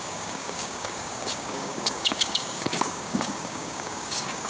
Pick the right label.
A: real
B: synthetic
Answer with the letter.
B